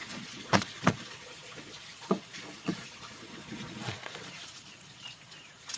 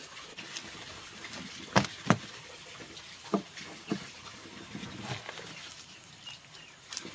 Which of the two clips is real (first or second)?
second